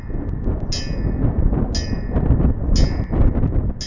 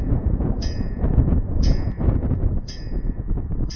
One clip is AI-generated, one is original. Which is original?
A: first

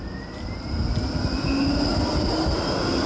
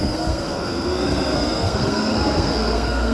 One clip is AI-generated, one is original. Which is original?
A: first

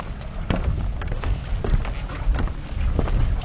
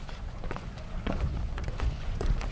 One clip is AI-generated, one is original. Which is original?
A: first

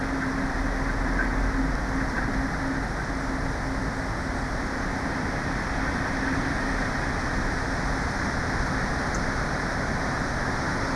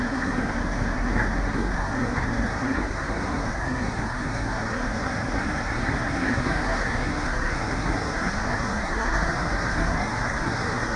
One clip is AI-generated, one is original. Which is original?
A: first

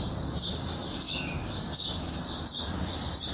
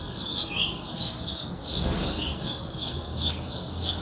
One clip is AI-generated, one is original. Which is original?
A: first